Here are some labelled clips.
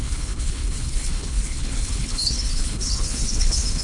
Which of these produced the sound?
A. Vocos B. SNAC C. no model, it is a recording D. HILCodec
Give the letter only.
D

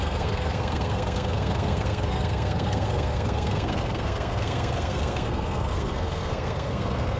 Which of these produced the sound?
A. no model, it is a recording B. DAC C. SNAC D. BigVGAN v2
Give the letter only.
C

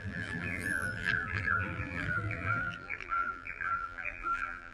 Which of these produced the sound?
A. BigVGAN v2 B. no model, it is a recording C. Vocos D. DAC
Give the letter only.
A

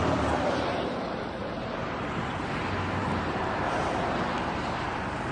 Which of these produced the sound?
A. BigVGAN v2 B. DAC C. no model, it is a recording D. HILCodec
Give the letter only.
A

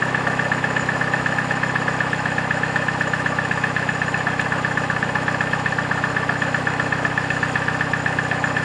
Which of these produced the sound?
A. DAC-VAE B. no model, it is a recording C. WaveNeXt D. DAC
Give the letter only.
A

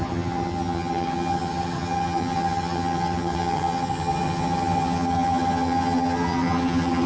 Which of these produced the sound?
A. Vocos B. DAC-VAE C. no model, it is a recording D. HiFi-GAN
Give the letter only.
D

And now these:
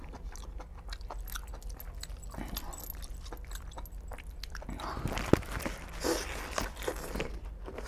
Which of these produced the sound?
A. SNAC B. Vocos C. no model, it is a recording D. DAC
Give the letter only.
C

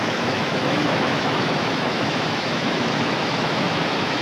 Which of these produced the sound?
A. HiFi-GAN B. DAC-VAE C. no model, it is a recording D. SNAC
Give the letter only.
B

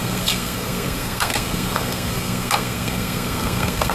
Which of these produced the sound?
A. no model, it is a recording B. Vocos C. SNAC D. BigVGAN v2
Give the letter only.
C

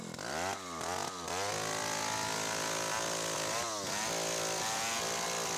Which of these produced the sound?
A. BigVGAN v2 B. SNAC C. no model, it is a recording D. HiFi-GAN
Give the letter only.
C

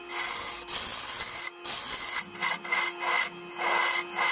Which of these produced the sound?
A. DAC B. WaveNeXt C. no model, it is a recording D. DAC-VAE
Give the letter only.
C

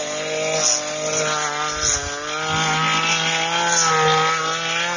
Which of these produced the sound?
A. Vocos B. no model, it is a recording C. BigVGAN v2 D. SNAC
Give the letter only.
B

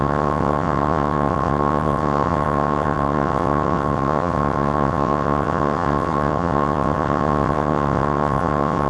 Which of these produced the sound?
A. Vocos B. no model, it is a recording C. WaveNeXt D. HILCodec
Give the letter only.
C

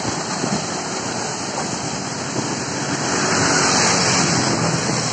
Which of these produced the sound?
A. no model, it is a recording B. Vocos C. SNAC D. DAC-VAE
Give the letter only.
A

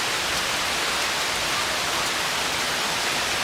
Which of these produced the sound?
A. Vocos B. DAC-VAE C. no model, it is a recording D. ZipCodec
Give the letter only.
C